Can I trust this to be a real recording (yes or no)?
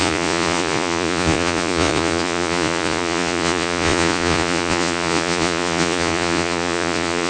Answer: no